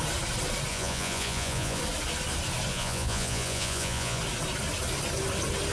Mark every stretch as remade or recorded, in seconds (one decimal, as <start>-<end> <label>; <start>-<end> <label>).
0.0-0.7 recorded; 0.7-1.8 remade; 1.8-2.7 recorded; 2.7-4.2 remade; 4.2-5.7 recorded